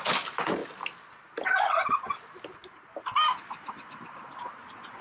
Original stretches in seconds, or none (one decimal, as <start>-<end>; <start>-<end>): 0.0-5.0